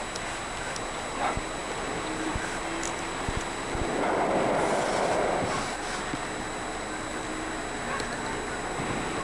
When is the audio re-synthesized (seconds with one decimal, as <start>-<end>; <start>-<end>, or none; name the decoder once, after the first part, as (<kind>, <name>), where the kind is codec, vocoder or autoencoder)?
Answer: none

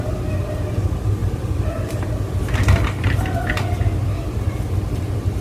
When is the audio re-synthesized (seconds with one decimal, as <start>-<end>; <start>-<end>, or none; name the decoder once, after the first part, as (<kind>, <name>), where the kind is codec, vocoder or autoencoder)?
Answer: 1.2-2.0 (vocoder, BigVGAN v2)